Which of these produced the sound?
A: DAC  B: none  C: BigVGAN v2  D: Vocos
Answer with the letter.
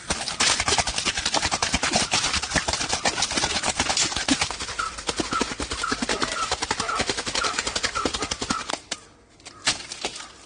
B